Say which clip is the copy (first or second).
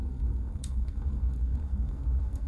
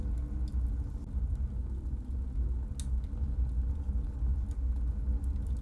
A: first